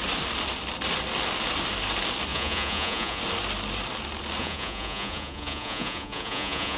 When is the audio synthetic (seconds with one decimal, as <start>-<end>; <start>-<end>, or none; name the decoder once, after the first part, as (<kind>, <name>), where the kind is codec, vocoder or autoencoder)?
2.3-3.2 (vocoder, Vocos); 4.4-6.8